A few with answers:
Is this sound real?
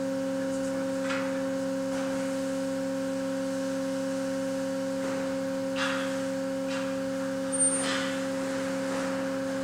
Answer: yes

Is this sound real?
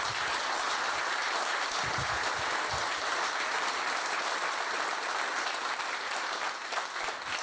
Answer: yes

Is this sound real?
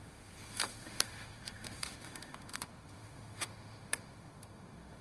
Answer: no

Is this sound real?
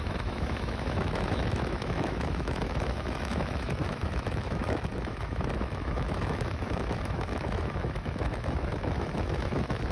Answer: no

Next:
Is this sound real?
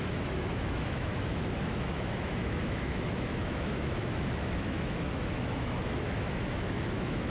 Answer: no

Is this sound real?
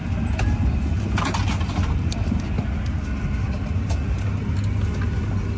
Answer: yes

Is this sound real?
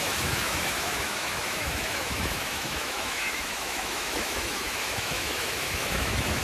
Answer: no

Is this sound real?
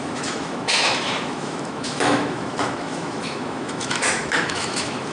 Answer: no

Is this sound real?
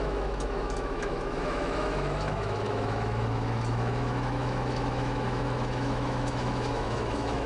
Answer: no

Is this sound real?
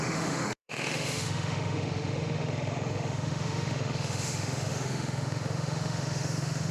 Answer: no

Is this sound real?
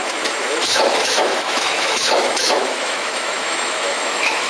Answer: no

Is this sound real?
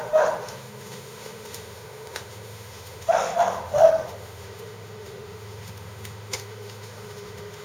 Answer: no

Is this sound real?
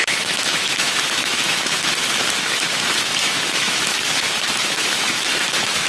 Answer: no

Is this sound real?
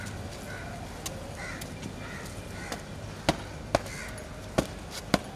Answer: yes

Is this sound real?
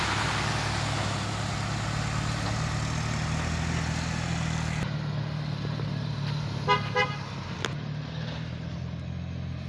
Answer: yes